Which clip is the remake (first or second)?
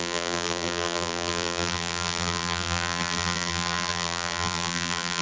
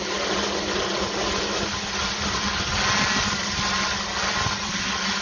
first